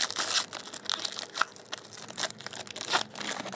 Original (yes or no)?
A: yes